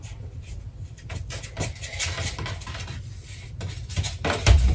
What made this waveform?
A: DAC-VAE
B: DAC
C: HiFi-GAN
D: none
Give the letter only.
D